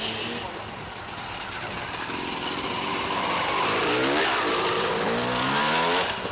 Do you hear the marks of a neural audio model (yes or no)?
no